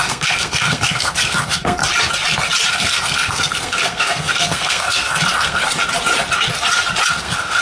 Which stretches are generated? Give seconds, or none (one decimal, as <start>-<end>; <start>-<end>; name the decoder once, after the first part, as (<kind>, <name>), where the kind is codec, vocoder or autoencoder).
0.0-1.8 (codec, SNAC); 2.7-5.6; 7.1-7.6